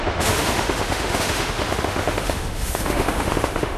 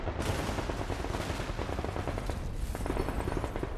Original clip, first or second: second